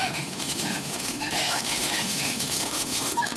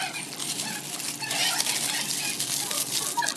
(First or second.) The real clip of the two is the second